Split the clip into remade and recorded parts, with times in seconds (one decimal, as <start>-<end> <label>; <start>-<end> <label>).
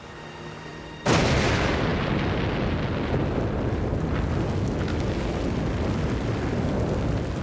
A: 0.0-7.4 recorded